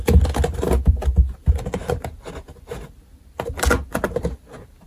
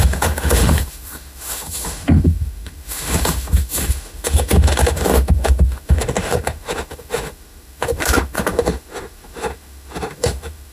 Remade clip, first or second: second